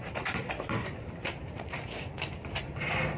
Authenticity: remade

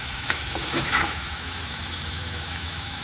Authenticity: remade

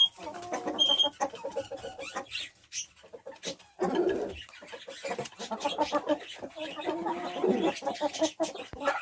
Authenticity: recorded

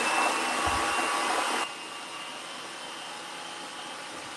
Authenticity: recorded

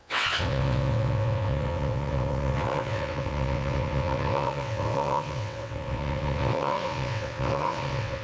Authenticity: remade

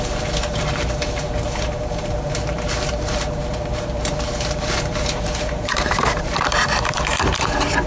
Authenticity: remade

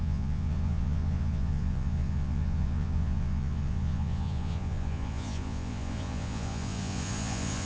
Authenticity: remade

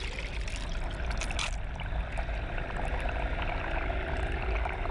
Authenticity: recorded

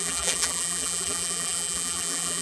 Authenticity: remade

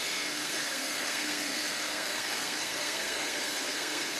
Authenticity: remade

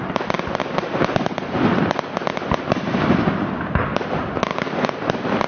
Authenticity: recorded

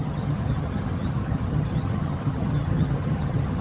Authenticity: remade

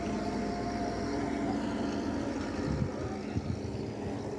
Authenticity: recorded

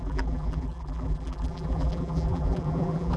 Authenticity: remade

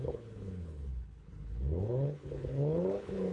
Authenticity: remade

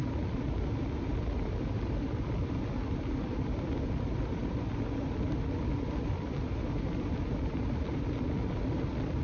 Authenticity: recorded